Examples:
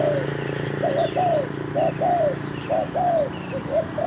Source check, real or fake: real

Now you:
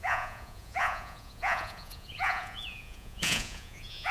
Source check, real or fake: fake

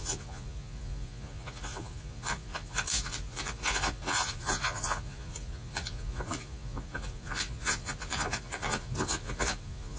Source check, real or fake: fake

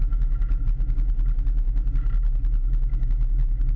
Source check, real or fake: real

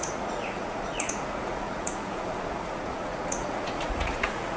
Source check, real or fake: fake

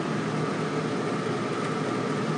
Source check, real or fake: real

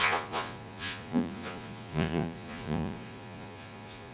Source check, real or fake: fake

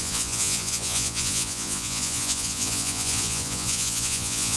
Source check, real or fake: fake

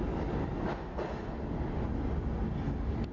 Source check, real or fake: real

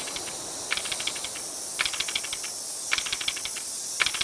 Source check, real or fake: real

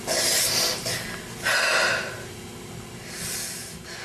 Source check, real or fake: real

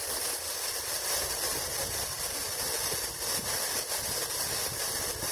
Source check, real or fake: real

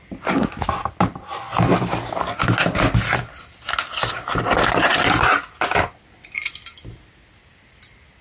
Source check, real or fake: real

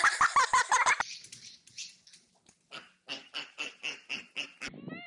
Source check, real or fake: real